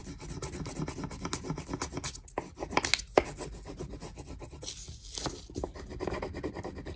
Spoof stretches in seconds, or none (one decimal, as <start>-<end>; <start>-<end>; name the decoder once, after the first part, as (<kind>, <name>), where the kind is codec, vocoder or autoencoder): none